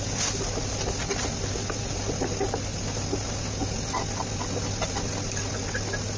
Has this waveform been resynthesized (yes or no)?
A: no